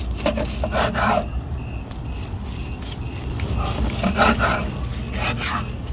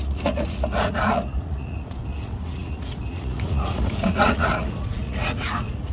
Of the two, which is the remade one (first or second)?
second